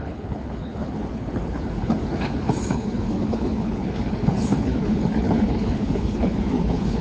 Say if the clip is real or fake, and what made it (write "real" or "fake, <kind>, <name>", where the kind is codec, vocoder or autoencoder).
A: fake, codec, HILCodec